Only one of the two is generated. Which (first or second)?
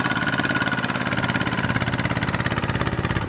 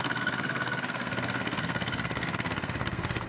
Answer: second